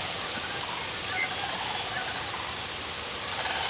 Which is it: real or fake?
real